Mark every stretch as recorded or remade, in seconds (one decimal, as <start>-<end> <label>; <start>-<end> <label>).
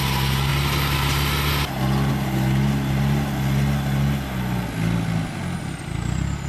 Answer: 0.0-6.5 recorded